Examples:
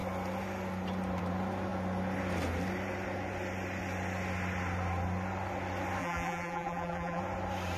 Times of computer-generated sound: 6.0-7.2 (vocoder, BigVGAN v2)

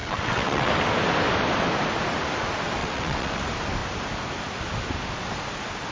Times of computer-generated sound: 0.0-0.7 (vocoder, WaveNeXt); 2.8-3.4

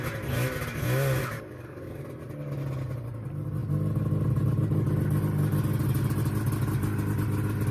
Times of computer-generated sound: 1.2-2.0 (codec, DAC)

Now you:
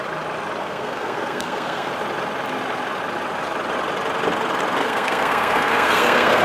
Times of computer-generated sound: 0.6-1.9 (codec, SNAC); 4.8-6.4

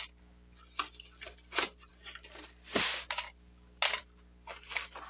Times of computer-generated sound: none

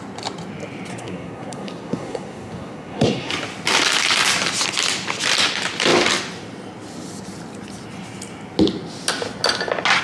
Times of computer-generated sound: 0.9-3.3 (codec, SNAC)

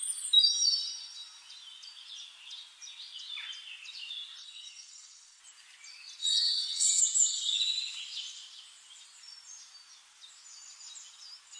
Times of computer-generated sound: 4.4-5.4 (vocoder, WaveNeXt); 6.2-7.0